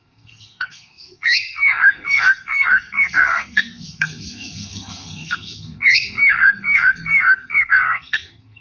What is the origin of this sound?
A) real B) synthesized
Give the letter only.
B